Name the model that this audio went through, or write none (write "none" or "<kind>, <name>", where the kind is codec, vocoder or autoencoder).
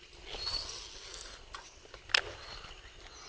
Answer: none